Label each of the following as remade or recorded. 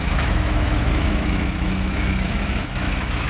remade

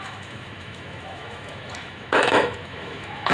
remade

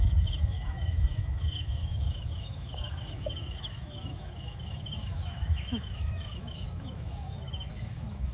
remade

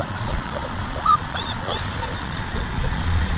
remade